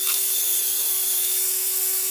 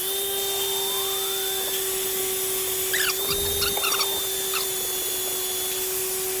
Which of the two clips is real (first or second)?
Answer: second